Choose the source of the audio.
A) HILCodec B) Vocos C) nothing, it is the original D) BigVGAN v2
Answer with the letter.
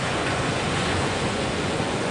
B